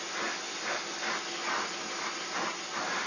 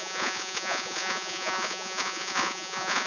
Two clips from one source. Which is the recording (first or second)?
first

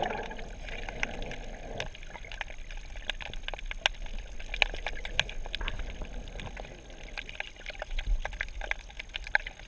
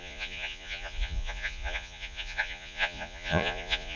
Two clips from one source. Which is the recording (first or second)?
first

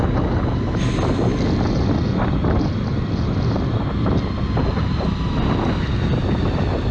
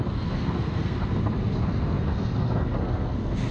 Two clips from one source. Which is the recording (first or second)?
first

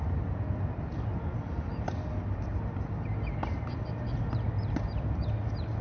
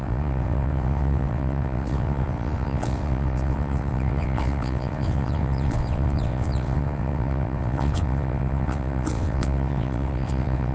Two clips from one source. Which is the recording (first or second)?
first